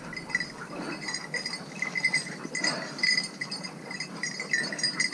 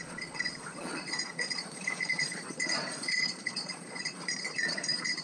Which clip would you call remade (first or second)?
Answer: second